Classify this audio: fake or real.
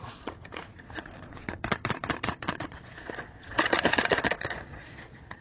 fake